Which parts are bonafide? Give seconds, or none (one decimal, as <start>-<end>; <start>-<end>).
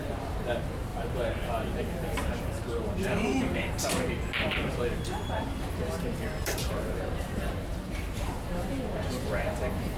none